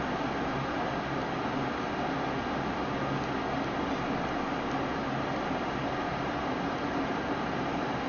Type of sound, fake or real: real